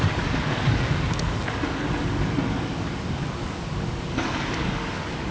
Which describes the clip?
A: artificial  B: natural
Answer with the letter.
A